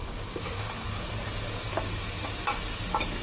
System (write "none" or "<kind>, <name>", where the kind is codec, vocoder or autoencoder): none